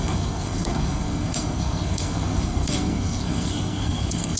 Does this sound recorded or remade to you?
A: remade